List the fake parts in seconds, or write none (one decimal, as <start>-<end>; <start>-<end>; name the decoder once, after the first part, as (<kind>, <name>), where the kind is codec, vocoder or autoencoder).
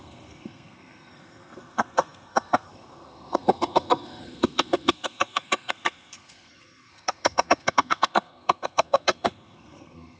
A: 0.0-10.2 (codec, SNAC)